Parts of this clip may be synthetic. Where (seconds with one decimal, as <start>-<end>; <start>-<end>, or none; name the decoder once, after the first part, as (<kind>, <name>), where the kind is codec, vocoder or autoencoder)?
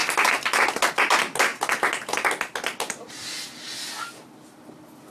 none